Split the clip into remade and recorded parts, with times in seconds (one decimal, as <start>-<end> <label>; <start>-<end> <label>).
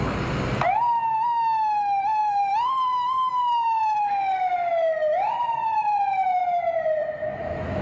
0.0-2.2 recorded; 2.2-3.3 remade; 3.3-6.4 recorded; 6.4-7.8 remade